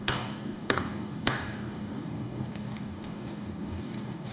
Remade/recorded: remade